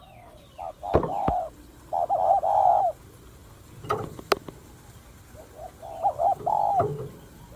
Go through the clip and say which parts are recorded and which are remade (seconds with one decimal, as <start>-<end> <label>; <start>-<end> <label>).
0.0-1.1 recorded; 1.1-3.0 remade; 3.0-7.6 recorded